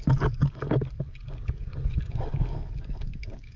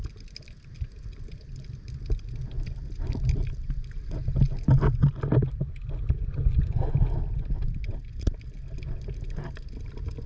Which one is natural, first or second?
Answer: second